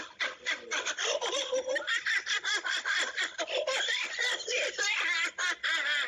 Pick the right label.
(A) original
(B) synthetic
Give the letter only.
A